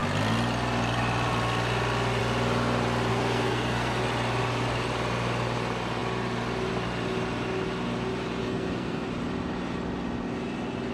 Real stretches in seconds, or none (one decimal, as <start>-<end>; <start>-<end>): 0.0-3.1; 4.0-8.4; 9.1-10.9